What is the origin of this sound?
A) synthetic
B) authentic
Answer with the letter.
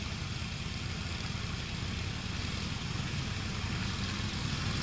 B